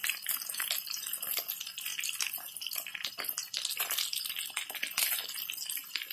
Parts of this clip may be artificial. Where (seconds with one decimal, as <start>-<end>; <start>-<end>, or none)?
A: none